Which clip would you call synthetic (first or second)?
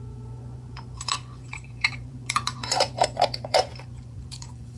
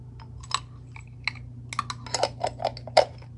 first